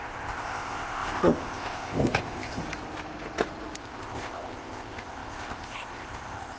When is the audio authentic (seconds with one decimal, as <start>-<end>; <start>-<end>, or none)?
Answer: 2.6-3.8

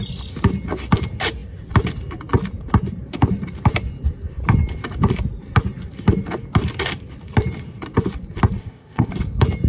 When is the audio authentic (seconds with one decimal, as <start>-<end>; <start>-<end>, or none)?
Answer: 0.0-8.6; 9.1-9.7

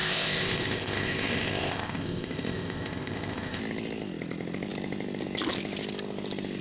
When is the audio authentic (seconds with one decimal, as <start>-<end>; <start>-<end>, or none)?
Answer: 3.6-6.6

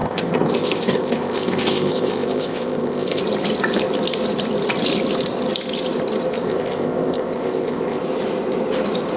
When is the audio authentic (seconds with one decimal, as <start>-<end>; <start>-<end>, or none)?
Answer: 3.2-6.3; 8.0-9.2

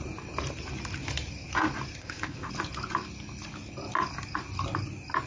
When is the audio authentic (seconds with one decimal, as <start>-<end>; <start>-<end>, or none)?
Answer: 0.0-2.0; 2.5-5.3

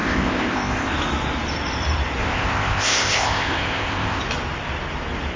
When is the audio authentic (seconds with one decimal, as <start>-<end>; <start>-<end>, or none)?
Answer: 0.9-2.2; 4.2-5.4

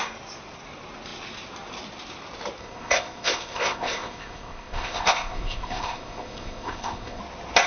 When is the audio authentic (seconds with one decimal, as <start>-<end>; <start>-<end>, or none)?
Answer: 0.0-2.6; 7.2-7.7

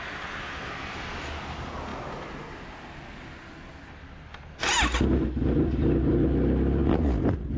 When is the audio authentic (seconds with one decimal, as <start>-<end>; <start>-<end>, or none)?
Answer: 0.0-7.6